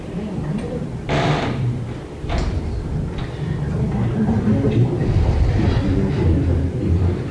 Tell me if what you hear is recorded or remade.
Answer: remade